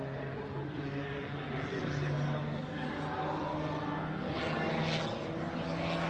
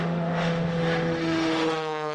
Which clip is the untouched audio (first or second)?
first